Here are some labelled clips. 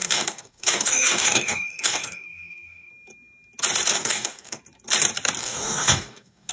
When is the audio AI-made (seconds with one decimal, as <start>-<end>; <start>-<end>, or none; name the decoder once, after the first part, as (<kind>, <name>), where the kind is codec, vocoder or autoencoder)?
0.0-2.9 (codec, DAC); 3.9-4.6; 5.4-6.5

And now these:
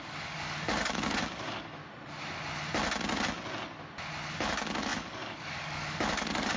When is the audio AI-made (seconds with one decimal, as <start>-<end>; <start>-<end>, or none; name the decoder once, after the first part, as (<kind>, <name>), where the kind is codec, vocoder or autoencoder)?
0.0-1.8 (codec, DAC); 4.3-6.6

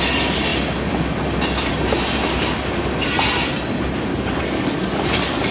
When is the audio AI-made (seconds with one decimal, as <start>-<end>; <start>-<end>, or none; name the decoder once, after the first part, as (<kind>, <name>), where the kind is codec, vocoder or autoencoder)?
4.1-5.5 (codec, DAC)

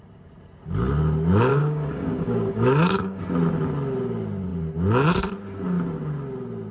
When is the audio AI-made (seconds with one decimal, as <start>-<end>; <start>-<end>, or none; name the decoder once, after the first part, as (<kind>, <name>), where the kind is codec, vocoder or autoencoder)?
1.5-3.2 (codec, DAC)